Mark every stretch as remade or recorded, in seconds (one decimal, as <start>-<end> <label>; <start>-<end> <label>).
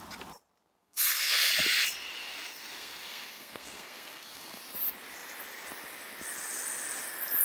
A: 0.0-0.8 recorded; 0.8-1.5 remade; 1.5-2.2 recorded; 2.2-4.6 remade; 4.6-7.4 recorded